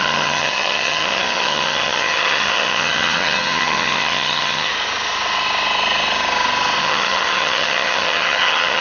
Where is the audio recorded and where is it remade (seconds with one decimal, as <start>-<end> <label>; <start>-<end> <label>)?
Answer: 0.0-4.7 remade; 4.7-6.8 recorded; 6.8-8.8 remade